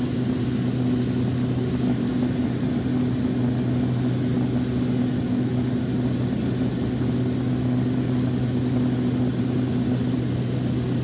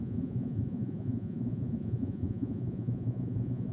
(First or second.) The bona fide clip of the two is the first